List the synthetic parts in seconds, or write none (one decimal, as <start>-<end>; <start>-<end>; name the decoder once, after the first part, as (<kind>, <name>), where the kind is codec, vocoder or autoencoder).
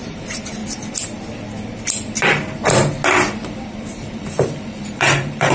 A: 0.0-0.6 (vocoder, BigVGAN v2); 3.9-5.5